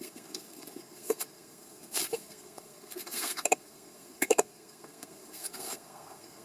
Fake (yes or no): yes